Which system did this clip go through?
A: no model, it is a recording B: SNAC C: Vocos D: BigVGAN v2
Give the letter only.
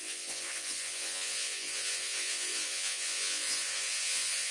C